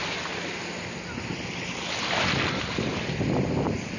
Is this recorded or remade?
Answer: recorded